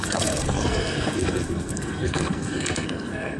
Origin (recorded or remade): remade